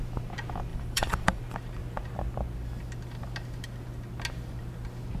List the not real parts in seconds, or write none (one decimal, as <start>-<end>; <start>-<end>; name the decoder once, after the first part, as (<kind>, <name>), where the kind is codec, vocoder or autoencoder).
0.7-1.4 (vocoder, BigVGAN v2)